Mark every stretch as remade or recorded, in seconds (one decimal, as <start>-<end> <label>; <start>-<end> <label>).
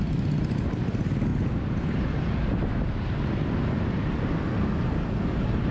0.0-5.7 recorded